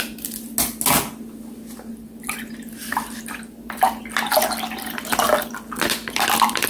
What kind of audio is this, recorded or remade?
recorded